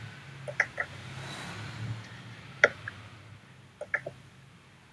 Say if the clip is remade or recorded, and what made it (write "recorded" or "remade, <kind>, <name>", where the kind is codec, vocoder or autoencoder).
recorded